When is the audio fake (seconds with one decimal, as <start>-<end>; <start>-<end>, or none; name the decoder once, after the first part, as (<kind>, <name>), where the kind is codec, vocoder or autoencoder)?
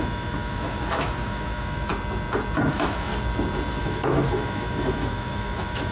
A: 0.0-1.9 (autoencoder, DAC-VAE); 2.7-3.1; 3.8-5.9